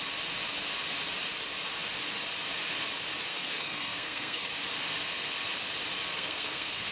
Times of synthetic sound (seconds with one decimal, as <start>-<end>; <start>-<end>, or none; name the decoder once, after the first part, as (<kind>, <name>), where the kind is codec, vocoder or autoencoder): 3.3-4.5 (codec, SNAC); 6.1-6.9

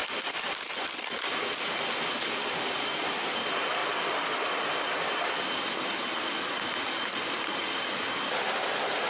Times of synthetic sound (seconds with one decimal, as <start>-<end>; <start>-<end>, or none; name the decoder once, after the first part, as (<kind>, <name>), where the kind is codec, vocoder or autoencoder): none